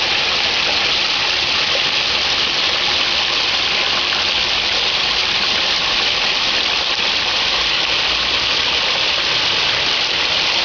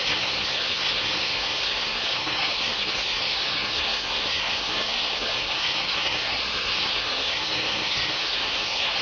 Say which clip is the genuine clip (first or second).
first